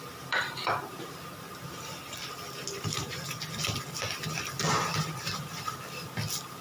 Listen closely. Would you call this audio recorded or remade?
remade